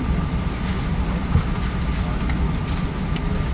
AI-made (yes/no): no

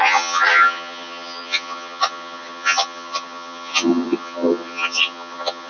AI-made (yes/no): yes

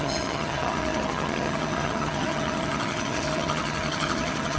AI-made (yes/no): yes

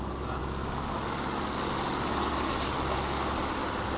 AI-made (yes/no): no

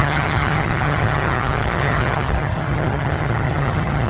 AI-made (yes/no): yes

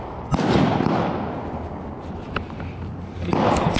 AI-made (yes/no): no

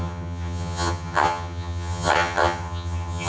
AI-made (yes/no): yes